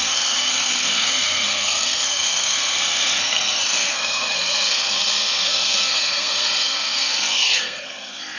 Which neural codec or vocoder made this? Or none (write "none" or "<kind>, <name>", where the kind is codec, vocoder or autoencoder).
codec, SNAC